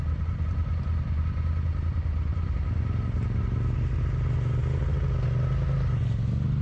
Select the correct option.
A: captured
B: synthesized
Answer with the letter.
A